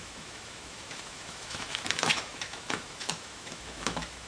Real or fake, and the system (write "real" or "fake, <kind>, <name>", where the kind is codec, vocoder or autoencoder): fake, autoencoder, DAC-VAE